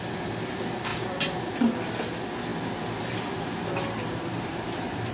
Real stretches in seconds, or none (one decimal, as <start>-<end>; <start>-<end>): 0.0-0.9; 1.5-5.1